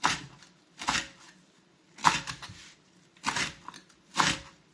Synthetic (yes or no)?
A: yes